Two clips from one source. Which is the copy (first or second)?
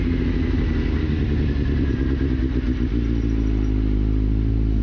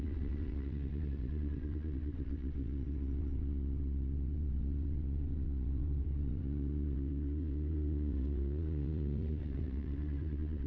second